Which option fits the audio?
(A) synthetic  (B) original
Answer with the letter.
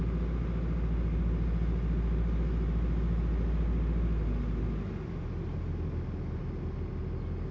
B